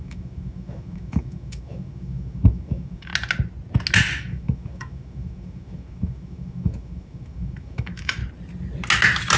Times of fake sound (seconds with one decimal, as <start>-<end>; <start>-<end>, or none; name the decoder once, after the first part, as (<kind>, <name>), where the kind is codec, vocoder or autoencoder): 0.0-3.1 (autoencoder, DAC-VAE); 4.2-8.2